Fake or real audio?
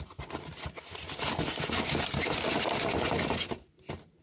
real